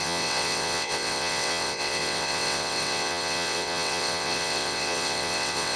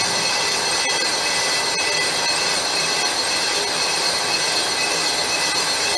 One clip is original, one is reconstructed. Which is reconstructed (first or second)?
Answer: first